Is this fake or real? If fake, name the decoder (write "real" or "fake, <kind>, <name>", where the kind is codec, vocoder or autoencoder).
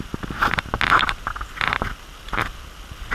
real